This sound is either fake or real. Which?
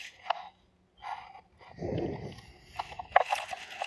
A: real